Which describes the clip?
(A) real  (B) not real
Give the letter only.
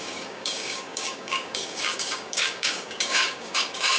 B